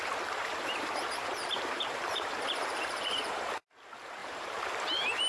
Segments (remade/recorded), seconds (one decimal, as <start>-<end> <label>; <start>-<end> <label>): 0.0-0.5 recorded; 0.5-3.7 remade; 3.7-4.2 recorded; 4.2-5.3 remade